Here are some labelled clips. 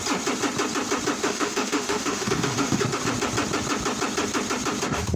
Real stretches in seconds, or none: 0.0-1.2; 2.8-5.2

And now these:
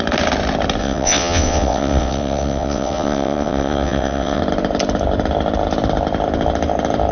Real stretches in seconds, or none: 0.0-0.8; 4.4-7.1

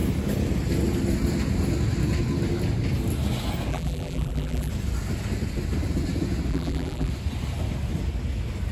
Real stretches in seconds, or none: 0.0-3.7; 4.7-6.5; 7.1-8.7